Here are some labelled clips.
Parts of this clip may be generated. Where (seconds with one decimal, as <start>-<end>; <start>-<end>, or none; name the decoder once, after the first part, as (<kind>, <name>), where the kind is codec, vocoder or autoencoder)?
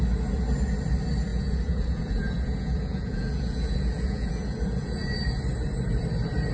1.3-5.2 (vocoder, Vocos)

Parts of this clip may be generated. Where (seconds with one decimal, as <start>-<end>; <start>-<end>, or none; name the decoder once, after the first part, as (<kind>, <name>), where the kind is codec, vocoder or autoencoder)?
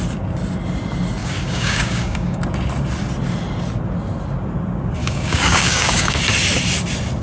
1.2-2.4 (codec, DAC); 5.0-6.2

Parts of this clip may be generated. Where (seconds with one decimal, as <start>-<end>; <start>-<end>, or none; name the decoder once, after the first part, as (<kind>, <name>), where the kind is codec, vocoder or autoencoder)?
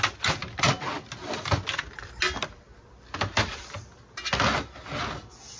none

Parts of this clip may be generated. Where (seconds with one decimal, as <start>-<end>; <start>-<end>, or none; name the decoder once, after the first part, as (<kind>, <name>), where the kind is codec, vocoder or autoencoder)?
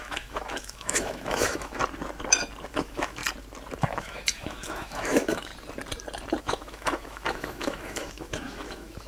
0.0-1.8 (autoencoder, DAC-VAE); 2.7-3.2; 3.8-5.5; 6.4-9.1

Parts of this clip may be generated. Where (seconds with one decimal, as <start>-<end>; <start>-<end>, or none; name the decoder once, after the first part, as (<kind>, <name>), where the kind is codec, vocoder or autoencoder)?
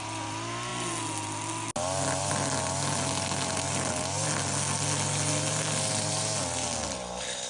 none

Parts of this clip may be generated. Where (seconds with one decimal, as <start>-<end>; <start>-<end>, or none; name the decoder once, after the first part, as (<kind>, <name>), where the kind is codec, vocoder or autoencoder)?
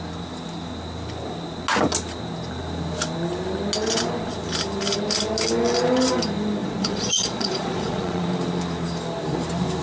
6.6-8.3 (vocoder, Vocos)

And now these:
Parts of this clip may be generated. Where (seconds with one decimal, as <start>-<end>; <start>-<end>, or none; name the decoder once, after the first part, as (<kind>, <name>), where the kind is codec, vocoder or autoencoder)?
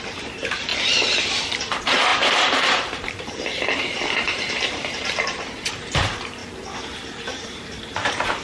0.0-0.7 (vocoder, BigVGAN v2); 1.3-6.4; 7.0-8.4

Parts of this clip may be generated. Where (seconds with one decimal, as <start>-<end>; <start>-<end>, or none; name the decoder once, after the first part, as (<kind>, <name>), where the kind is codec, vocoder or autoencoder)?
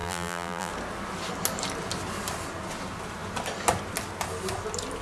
0.0-0.7 (vocoder, BigVGAN v2)